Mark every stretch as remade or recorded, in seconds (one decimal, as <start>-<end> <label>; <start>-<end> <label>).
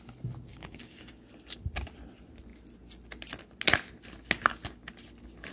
0.0-0.5 recorded; 0.5-1.3 remade; 1.3-5.5 recorded